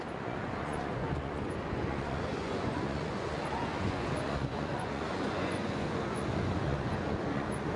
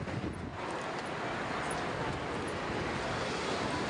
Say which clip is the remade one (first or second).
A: first